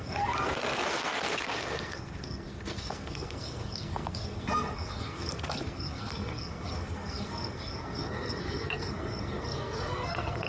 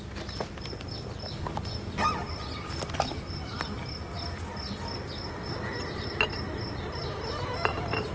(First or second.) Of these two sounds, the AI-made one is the first